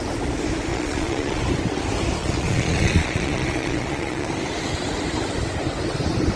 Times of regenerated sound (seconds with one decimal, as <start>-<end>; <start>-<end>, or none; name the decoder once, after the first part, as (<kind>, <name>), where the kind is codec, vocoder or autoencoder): 0.7-1.4 (vocoder, Vocos); 2.2-4.3